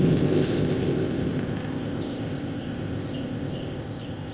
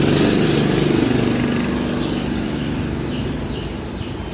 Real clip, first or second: second